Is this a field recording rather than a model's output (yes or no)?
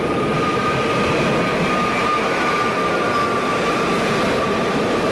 yes